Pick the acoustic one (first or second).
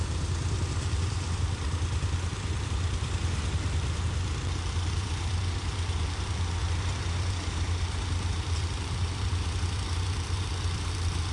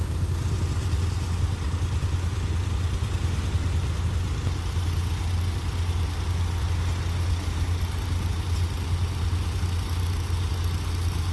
second